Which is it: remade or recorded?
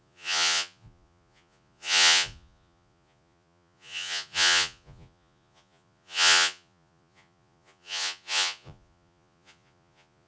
remade